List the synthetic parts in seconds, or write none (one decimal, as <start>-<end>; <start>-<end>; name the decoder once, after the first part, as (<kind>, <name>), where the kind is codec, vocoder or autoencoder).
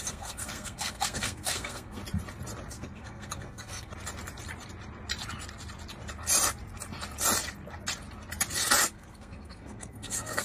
0.0-2.0 (codec, SNAC); 2.7-3.9; 8.9-10.4